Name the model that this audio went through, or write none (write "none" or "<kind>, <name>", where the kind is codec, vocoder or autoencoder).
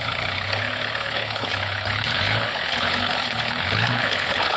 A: codec, HILCodec